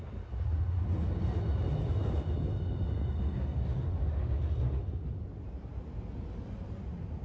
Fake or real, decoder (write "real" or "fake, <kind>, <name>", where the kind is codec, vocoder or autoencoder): real